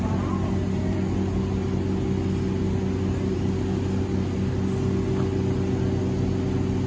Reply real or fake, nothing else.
real